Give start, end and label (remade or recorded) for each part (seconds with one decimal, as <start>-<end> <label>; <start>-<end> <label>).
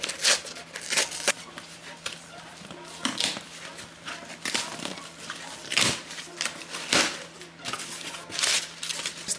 0.0-9.4 recorded